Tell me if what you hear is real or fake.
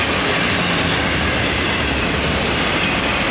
real